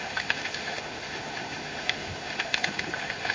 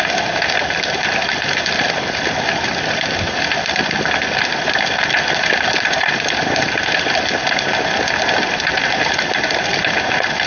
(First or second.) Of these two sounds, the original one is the second